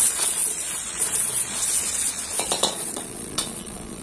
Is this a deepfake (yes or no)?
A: yes